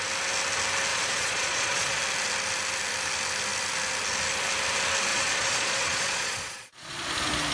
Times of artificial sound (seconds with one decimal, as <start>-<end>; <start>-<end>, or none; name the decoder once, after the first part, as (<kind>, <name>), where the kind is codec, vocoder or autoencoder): 0.9-2.0 (vocoder, Vocos); 5.1-7.1